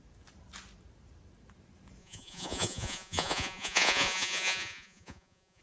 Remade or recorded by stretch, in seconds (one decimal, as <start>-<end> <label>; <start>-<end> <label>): 0.0-2.0 recorded; 2.0-5.6 remade